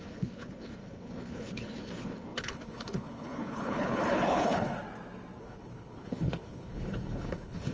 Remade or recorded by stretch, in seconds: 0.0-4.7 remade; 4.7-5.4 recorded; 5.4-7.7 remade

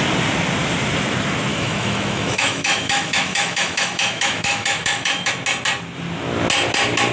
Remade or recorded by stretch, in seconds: 0.0-1.5 recorded; 1.5-5.3 remade; 5.3-7.1 recorded

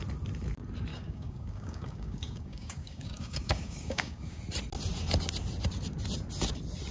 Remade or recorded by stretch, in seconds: 0.0-0.9 recorded; 0.9-4.4 remade; 4.4-6.9 recorded

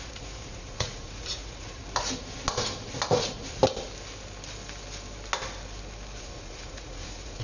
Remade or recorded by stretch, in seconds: 0.0-1.8 remade; 1.8-6.2 recorded; 6.2-7.4 remade

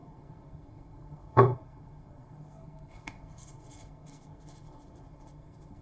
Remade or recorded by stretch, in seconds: 0.0-5.8 remade